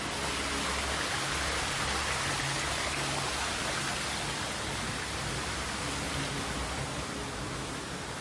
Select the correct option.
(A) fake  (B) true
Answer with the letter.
B